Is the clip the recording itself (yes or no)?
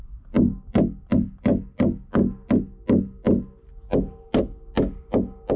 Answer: yes